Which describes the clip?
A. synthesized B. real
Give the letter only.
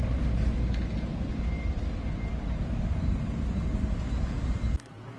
B